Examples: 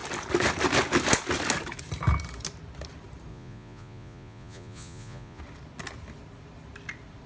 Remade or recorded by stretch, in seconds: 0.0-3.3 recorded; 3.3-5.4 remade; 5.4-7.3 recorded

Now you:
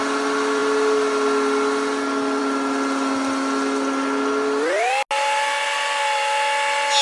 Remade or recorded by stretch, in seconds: 0.0-7.0 recorded

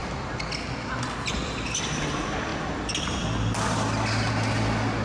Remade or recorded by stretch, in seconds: 0.0-5.0 recorded

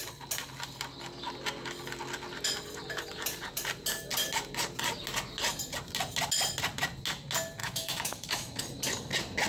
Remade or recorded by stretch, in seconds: 0.0-7.6 recorded; 7.6-8.6 remade; 8.6-9.5 recorded

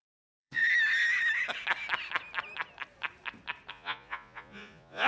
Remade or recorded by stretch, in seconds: 0.0-0.6 remade; 0.6-3.7 recorded; 3.7-5.1 remade

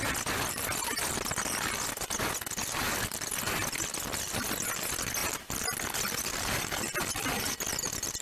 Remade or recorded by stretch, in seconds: 0.0-2.6 recorded; 2.6-3.3 remade; 3.3-5.2 recorded; 5.2-5.9 remade; 5.9-8.2 recorded

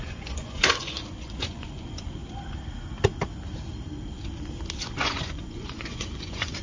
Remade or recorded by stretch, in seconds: 0.0-2.2 remade; 2.2-4.8 recorded; 4.8-6.6 remade

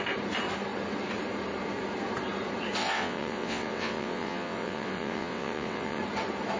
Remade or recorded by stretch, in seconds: 0.0-2.8 recorded; 2.8-6.0 remade; 6.0-6.6 recorded